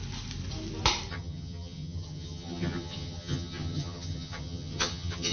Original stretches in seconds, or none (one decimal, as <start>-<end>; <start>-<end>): 0.0-1.1